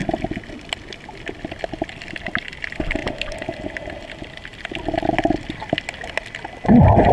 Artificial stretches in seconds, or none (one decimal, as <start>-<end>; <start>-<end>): none